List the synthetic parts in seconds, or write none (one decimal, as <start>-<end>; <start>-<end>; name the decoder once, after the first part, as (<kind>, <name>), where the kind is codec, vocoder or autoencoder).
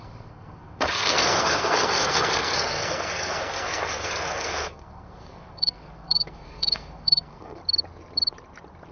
0.0-7.6 (codec, SNAC)